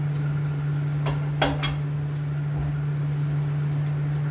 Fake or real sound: real